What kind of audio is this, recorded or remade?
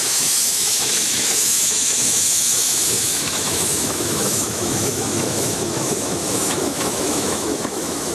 remade